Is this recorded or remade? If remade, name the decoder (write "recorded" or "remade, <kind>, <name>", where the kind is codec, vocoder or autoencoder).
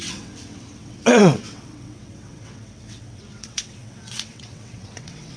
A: remade, vocoder, WaveNeXt